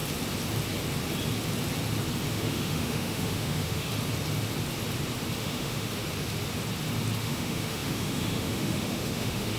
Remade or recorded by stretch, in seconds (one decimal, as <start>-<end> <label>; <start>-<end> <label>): 0.0-2.3 recorded; 2.3-3.9 remade; 3.9-5.4 recorded; 5.4-5.9 remade; 5.9-7.2 recorded; 7.2-9.6 remade